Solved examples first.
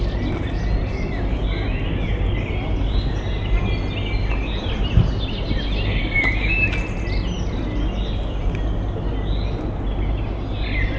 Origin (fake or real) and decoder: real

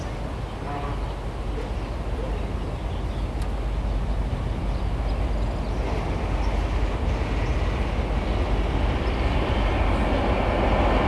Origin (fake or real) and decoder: real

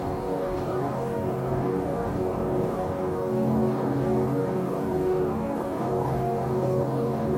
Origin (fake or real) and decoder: fake, codec, DAC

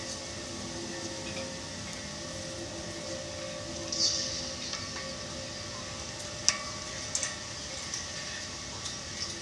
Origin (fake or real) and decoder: real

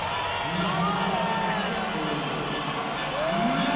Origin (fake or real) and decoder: real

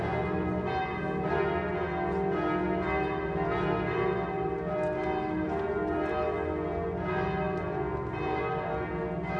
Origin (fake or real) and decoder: real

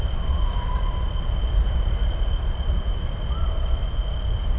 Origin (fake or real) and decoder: real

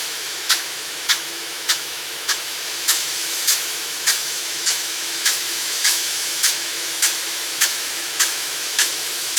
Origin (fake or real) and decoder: fake, autoencoder, DAC-VAE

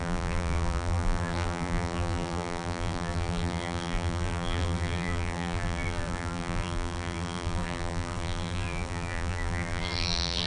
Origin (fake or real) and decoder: fake, vocoder, BigVGAN v2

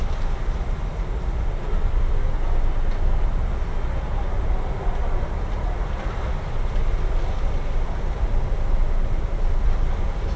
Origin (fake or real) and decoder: real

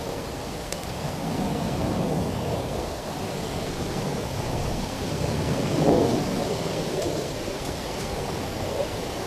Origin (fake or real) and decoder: fake, codec, SNAC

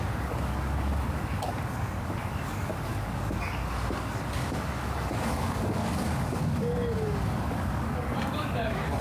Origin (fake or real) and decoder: fake, codec, DAC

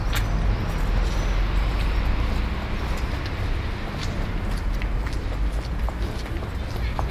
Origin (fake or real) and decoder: real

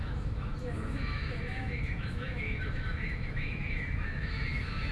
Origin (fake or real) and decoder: fake, autoencoder, DAC-VAE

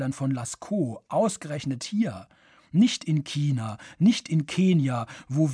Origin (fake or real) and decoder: real